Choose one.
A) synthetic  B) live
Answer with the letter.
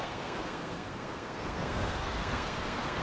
A